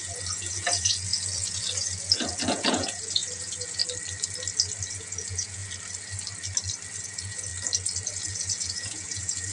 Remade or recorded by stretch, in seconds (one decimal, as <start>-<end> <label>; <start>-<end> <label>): 0.0-3.8 remade; 3.8-4.9 recorded; 4.9-5.6 remade; 5.6-7.0 recorded; 7.0-7.5 remade; 7.5-8.1 recorded; 8.1-9.5 remade